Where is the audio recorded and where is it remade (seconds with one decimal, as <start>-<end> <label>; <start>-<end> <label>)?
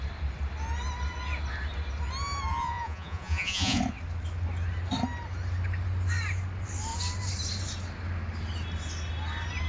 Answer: 0.0-2.5 recorded; 2.5-3.8 remade; 3.8-9.7 recorded